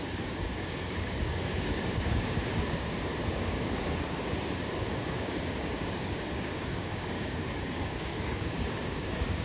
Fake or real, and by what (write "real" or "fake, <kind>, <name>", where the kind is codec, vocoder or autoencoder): fake, codec, DAC